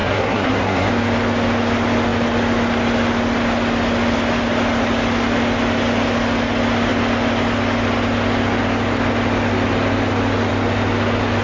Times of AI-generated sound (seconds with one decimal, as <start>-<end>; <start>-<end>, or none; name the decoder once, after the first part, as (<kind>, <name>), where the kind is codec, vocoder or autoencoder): 0.0-0.9 (codec, SNAC)